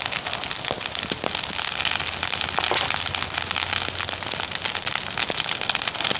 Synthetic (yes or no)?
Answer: no